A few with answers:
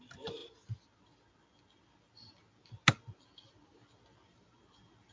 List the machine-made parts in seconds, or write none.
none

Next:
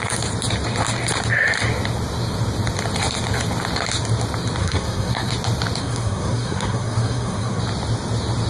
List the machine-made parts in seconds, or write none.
4.6-5.3 (codec, SNAC); 5.8-7.6